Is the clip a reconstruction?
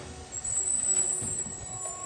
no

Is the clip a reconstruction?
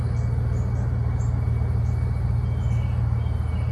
no